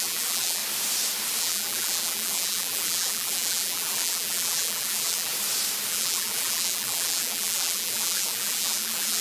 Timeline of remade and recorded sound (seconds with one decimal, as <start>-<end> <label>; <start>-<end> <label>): 0.0-0.6 remade; 0.6-1.4 recorded; 1.4-5.3 remade; 5.3-5.9 recorded; 5.9-9.2 remade